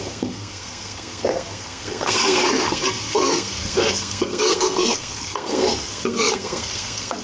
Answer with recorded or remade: remade